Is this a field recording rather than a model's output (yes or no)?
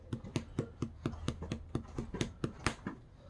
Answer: yes